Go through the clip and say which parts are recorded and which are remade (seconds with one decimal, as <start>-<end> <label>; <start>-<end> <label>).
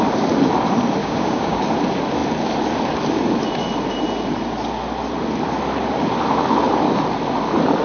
0.0-1.0 recorded; 1.0-1.6 remade; 1.6-7.8 recorded